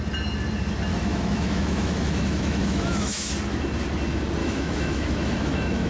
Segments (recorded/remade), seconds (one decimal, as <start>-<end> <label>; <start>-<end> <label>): 0.0-0.9 recorded; 0.9-3.3 remade; 3.3-4.4 recorded; 4.4-5.9 remade